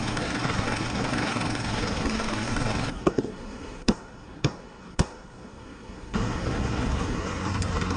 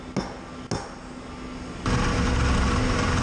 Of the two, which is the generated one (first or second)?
first